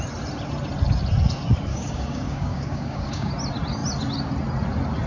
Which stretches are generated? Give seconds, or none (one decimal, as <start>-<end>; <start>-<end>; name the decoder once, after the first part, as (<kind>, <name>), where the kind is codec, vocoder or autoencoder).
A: 1.7-3.3 (codec, DAC)